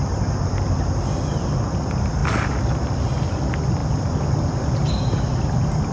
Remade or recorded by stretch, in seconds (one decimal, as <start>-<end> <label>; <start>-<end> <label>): 0.0-3.8 recorded; 3.8-4.9 remade; 4.9-5.9 recorded